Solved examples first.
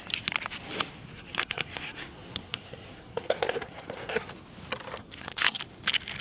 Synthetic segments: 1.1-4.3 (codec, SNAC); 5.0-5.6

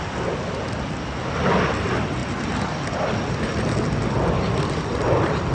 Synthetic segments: none

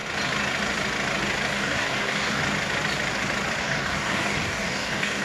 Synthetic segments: 1.5-2.4 (codec, DAC); 3.6-5.2

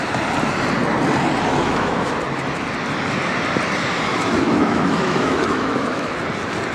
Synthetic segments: 1.5-2.1 (autoencoder, DAC-VAE); 4.1-6.1

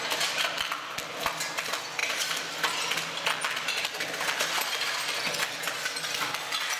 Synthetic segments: none

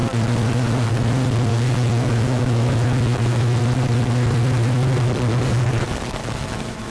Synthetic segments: 1.5-3.6 (autoencoder, DAC-VAE); 6.2-6.9